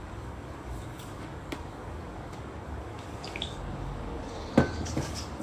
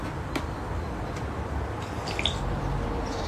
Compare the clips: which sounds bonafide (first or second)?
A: second